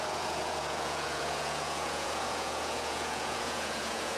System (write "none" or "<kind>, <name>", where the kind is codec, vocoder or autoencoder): vocoder, Vocos